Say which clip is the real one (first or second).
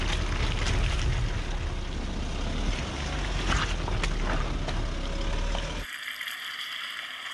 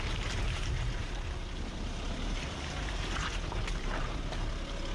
first